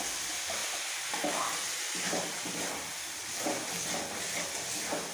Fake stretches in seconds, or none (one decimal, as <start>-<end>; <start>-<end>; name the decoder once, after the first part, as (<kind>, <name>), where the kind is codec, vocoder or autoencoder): 0.6-3.7 (vocoder, BigVGAN v2)